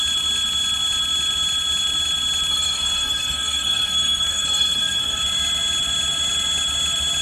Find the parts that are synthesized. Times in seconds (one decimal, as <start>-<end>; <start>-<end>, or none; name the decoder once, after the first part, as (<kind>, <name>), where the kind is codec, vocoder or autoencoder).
2.5-5.2 (codec, SNAC)